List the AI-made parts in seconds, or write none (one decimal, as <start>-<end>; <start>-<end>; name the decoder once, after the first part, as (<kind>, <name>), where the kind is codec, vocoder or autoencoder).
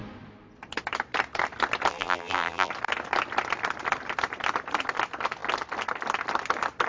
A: 1.9-2.7 (vocoder, BigVGAN v2)